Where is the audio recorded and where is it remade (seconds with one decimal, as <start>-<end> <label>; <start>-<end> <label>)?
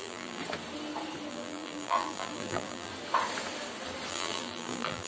0.0-0.4 remade; 0.4-1.3 recorded; 1.3-2.9 remade; 2.9-4.1 recorded; 4.1-5.1 remade